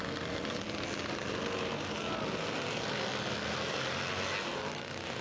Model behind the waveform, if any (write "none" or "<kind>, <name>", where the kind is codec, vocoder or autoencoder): none